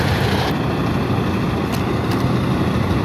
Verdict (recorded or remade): recorded